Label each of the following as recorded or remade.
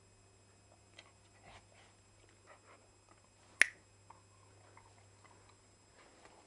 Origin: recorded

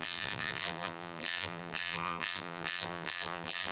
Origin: remade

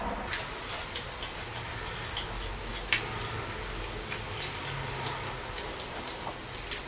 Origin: recorded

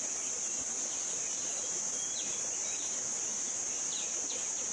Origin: recorded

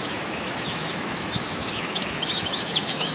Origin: remade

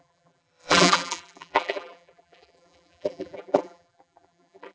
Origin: remade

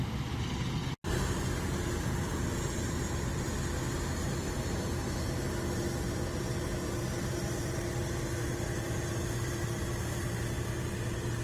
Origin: recorded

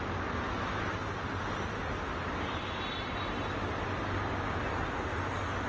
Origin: recorded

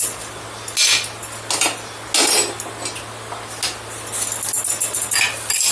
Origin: recorded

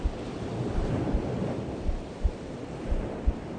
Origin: recorded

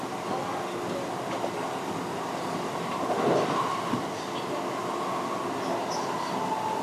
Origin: recorded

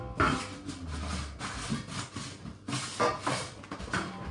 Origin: recorded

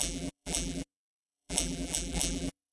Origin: remade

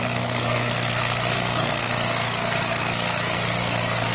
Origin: remade